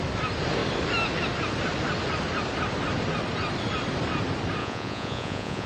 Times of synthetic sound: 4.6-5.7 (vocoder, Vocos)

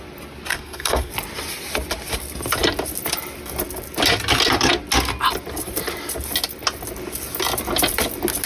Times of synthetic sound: 0.5-1.1 (codec, SNAC)

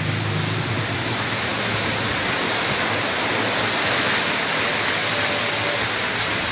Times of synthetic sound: none